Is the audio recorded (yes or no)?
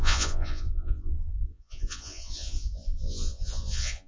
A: no